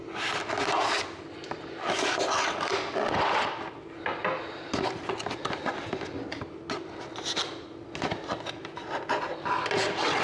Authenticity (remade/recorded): recorded